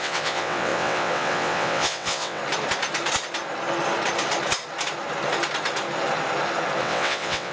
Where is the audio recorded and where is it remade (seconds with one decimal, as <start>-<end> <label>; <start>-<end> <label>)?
0.0-2.4 remade; 2.4-6.8 recorded; 6.8-7.5 remade